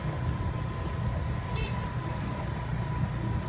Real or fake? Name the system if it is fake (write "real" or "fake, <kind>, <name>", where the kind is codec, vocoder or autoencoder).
real